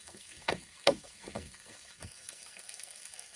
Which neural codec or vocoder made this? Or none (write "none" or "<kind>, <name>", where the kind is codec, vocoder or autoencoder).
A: codec, SNAC